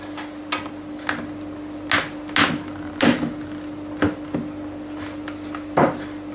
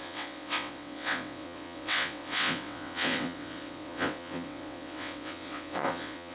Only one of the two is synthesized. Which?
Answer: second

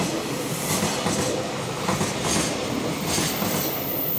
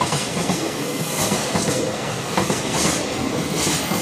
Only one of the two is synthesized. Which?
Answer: second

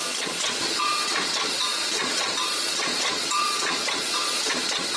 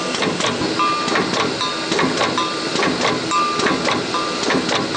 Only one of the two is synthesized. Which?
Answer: first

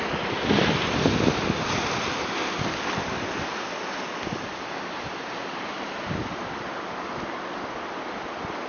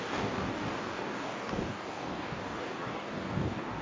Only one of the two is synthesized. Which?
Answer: second